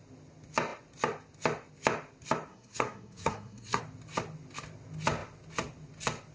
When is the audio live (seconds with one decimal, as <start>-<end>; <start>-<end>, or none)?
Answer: 0.0-2.5; 3.8-6.3